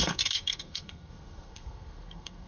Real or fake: fake